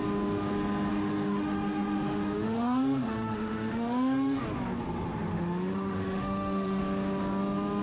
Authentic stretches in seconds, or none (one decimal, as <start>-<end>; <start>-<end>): 0.0-0.9; 4.4-5.3; 6.8-7.8